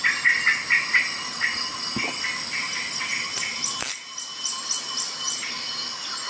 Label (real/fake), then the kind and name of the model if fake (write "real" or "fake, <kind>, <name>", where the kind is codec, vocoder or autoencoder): real